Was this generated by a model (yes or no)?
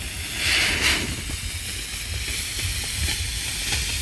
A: no